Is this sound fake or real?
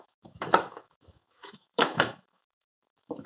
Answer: fake